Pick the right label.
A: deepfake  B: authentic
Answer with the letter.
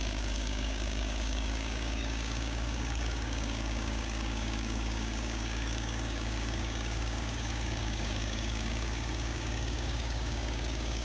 A